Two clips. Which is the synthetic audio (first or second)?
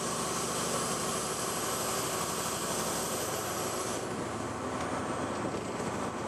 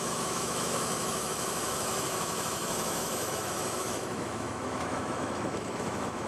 second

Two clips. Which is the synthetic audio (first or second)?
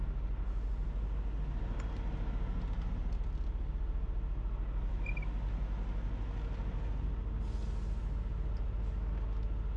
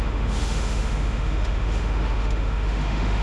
second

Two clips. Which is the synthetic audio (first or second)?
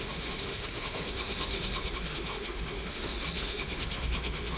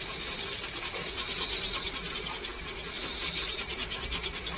first